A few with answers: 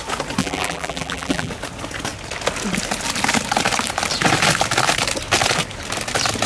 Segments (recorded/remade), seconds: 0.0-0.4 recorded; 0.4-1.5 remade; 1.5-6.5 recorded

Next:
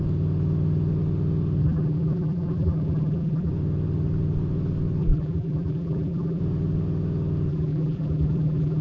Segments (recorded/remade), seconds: 0.0-1.6 recorded; 1.6-3.5 remade; 3.5-5.0 recorded; 5.0-6.4 remade; 6.4-7.5 recorded; 7.5-8.8 remade

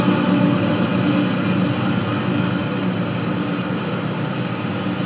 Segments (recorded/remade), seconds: 0.0-2.6 recorded; 2.6-3.8 remade; 3.8-5.1 recorded

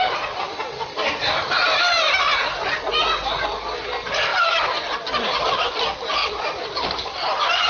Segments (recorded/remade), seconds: 0.0-4.3 recorded; 4.3-5.8 remade; 5.8-6.2 recorded; 6.2-7.7 remade

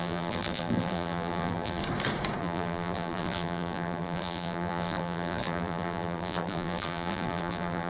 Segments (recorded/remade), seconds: 0.0-1.8 remade; 1.8-2.4 recorded; 2.4-7.9 remade